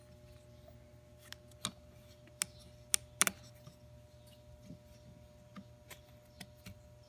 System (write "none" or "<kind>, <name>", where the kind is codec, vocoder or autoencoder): none